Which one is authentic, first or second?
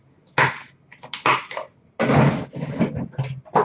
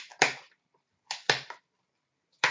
first